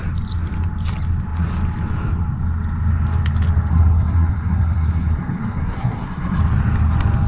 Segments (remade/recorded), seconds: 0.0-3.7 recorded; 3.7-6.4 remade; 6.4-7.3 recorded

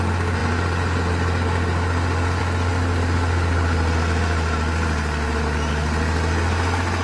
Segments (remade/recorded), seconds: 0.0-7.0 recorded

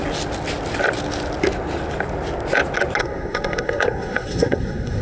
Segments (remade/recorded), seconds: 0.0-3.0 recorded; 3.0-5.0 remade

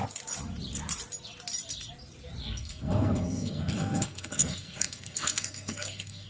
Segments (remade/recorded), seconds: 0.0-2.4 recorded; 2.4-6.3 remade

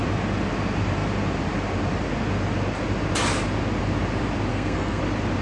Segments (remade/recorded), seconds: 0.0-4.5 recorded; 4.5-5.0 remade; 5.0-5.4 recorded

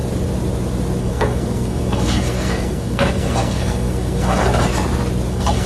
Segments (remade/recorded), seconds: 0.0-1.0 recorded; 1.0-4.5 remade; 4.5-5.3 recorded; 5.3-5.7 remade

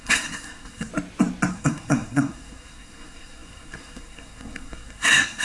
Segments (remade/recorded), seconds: 0.0-0.9 remade; 0.9-1.5 recorded; 1.5-5.4 remade

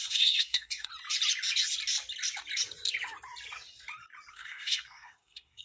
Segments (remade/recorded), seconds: 0.0-0.9 remade; 0.9-4.3 recorded; 4.3-5.6 remade